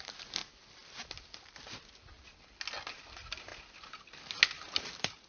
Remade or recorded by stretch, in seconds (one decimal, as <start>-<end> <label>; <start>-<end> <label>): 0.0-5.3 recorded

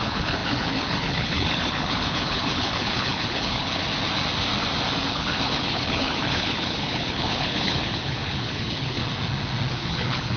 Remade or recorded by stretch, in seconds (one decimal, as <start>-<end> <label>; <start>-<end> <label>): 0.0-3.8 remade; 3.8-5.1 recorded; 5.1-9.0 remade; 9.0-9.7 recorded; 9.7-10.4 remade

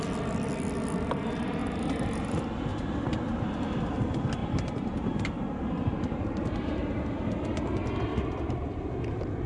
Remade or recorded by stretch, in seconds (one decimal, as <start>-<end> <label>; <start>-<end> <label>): 0.0-1.6 recorded; 1.6-2.2 remade; 2.2-2.7 recorded; 2.7-3.6 remade; 3.6-4.4 recorded; 4.4-7.2 remade; 7.2-8.1 recorded; 8.1-9.5 remade